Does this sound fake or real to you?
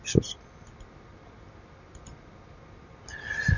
real